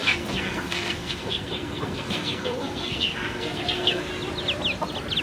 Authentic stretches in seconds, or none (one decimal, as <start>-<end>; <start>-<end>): 4.1-5.2